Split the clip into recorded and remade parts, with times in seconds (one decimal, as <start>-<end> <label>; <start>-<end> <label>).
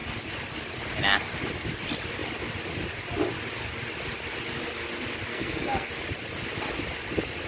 0.0-5.3 recorded; 5.3-5.9 remade; 5.9-7.5 recorded